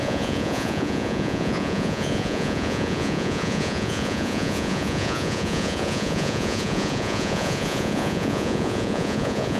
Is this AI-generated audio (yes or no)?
yes